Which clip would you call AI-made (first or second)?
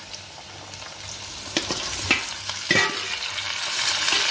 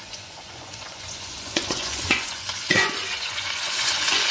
second